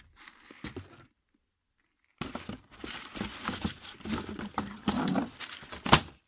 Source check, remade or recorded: recorded